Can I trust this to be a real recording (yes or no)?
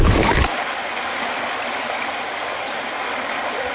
yes